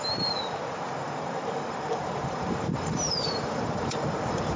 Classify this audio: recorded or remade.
remade